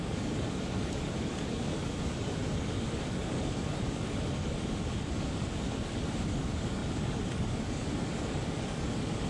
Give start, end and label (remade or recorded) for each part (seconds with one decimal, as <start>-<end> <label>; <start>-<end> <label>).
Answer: 0.0-9.3 remade